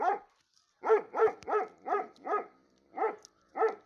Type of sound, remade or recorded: remade